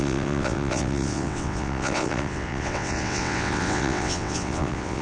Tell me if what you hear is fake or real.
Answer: fake